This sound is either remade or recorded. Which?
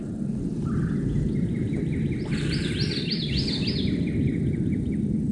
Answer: recorded